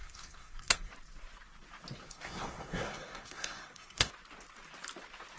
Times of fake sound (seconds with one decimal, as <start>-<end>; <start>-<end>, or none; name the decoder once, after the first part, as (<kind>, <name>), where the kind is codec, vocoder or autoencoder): 0.0-0.9 (codec, SNAC); 2.0-4.1

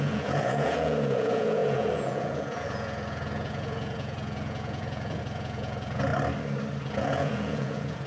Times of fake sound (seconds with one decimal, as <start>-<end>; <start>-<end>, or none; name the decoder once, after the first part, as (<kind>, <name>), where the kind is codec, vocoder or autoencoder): 0.0-6.1 (vocoder, Vocos); 6.8-8.1

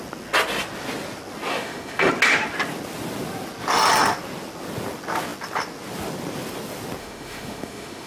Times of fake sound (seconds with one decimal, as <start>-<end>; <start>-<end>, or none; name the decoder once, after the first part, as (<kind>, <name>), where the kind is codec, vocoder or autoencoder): 1.5-2.1 (autoencoder, DAC-VAE); 7.0-8.1